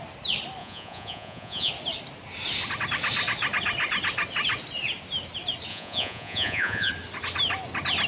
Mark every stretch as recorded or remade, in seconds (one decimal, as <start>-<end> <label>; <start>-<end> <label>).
0.0-0.6 recorded; 0.6-1.7 remade; 1.7-5.7 recorded; 5.7-6.9 remade; 6.9-8.1 recorded